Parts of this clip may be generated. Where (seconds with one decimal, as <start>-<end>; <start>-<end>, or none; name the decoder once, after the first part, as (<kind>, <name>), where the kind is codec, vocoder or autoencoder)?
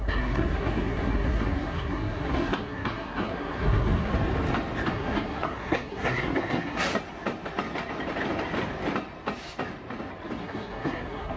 0.0-4.1 (codec, SNAC); 4.9-6.9; 10.4-11.4